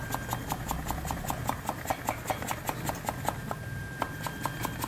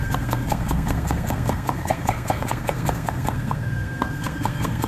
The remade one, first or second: second